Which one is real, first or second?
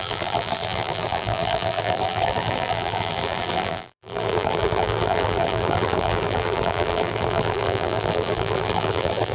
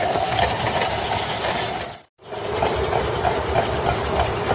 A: second